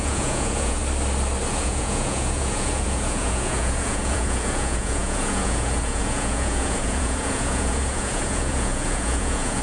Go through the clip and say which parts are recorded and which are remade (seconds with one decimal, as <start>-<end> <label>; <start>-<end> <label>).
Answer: 0.0-0.8 remade; 0.8-1.5 recorded; 1.5-9.6 remade